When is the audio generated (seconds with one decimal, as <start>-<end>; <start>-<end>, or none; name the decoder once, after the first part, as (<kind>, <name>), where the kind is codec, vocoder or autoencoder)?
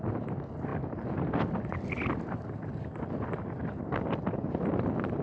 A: none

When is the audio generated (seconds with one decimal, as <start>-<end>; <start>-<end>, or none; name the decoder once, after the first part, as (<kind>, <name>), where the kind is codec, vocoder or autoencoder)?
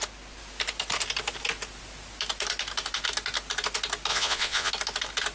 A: 4.1-4.7 (vocoder, Vocos)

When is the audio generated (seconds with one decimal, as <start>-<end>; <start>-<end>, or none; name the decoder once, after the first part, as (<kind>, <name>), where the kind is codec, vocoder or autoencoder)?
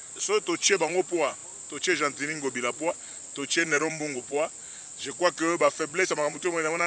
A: 0.0-1.4 (vocoder, Vocos); 2.9-6.9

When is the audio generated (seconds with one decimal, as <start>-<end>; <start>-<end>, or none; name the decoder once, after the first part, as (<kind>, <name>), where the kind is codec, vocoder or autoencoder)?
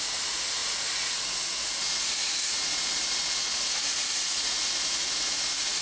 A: 0.0-5.8 (vocoder, Vocos)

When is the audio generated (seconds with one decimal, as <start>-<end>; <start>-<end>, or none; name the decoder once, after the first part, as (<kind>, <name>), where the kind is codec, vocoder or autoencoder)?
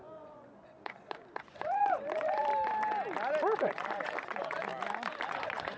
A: 0.0-2.5 (vocoder, Vocos); 3.6-4.7; 5.3-5.8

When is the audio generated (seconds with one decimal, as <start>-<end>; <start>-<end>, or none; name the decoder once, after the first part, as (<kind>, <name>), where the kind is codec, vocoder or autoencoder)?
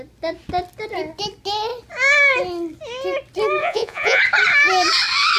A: 3.6-4.2 (vocoder, Vocos)